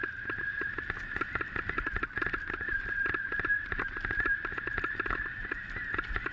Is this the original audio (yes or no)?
yes